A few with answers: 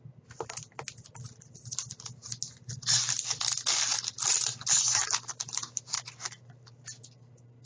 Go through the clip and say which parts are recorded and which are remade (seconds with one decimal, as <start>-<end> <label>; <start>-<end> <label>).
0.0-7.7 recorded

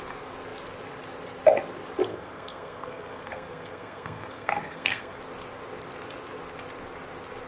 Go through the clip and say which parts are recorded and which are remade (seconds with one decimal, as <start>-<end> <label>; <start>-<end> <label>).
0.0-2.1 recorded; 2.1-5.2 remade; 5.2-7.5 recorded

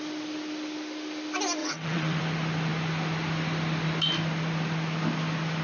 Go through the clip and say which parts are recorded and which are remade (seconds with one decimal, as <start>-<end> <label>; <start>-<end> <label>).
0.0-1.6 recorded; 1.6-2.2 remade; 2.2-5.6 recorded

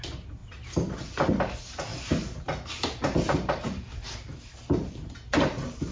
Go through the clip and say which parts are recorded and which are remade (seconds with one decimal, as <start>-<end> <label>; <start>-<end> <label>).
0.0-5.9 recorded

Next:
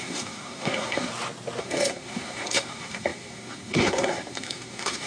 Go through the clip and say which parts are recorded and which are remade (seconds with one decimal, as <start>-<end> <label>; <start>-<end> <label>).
0.0-1.1 remade; 1.1-1.6 recorded; 1.6-5.1 remade